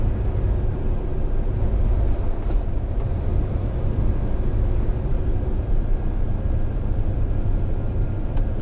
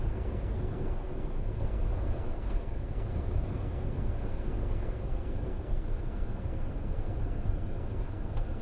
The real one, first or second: first